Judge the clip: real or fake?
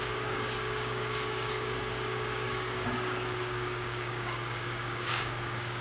fake